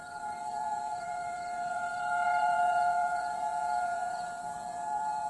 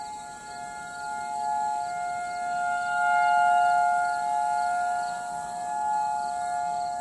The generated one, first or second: first